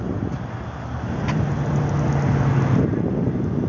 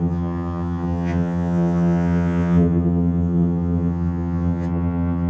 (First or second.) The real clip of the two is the first